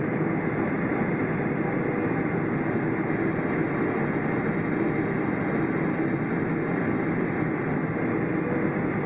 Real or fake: real